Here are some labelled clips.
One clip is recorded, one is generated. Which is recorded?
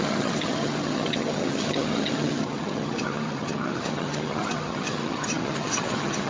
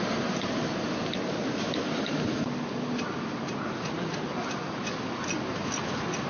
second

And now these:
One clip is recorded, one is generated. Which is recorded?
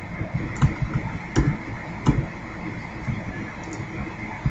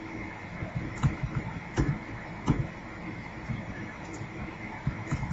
first